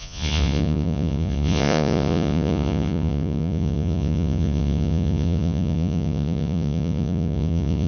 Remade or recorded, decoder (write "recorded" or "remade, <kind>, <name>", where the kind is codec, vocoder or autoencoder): remade, vocoder, Vocos